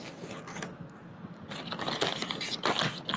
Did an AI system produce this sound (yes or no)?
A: no